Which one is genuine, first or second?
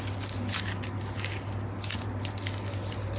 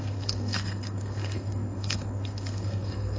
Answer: first